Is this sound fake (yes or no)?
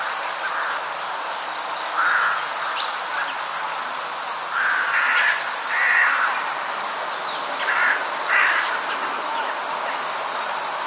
no